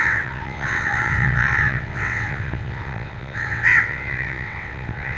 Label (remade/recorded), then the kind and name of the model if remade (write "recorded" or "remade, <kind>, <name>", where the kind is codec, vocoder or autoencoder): remade, vocoder, WaveNeXt